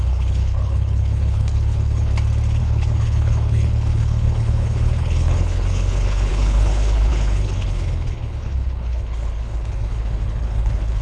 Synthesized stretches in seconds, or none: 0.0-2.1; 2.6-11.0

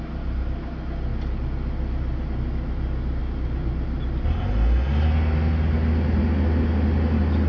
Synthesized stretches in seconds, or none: none

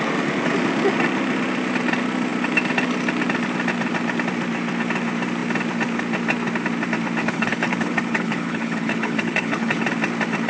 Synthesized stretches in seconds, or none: 7.2-9.8

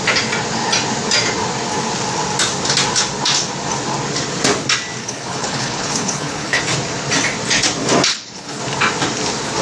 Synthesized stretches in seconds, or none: 5.0-6.6; 8.1-8.6

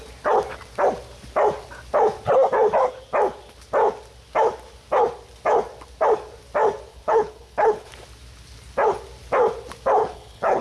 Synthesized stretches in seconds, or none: 6.9-7.9; 10.0-10.6

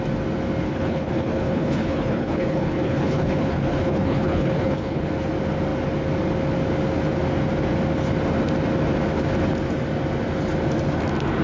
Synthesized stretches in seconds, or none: 0.6-5.1

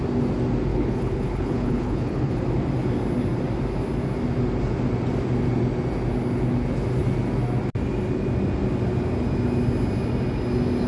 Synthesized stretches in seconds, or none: 0.7-2.4